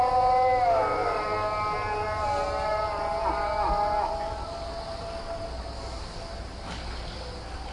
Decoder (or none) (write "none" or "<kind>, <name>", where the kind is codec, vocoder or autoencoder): none